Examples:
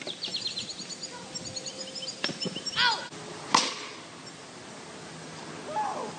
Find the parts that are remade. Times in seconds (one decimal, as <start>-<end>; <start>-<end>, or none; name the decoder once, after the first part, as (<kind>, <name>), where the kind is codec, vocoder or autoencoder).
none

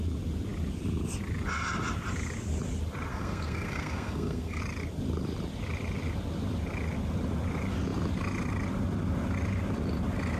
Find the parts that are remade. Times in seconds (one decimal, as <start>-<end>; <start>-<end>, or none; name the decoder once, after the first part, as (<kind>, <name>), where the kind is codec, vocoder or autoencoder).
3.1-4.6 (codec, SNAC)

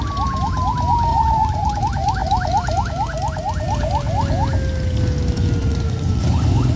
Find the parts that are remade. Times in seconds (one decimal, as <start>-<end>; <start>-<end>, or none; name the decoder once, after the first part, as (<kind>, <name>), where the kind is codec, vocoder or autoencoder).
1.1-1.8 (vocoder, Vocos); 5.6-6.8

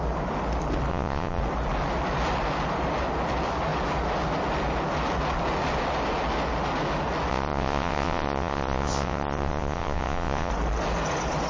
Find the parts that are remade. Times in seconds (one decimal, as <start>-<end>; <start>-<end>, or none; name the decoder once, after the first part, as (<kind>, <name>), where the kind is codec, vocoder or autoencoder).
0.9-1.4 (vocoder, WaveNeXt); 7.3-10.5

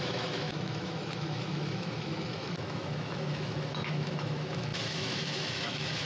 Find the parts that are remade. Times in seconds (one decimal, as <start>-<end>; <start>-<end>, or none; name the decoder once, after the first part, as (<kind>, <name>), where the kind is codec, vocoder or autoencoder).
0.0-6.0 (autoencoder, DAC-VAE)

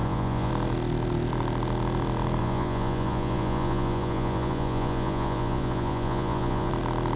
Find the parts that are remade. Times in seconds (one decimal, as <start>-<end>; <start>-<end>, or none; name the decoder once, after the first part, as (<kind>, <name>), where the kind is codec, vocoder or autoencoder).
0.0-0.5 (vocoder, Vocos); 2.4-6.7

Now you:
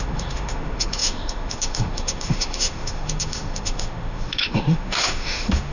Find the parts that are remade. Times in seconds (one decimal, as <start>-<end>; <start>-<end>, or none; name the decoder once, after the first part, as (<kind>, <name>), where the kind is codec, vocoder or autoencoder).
0.0-5.7 (autoencoder, DAC-VAE)

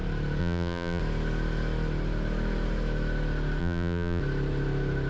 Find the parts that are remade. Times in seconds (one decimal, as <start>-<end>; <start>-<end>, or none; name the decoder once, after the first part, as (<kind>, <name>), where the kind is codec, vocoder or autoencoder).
0.4-1.0 (vocoder, BigVGAN v2); 3.6-4.2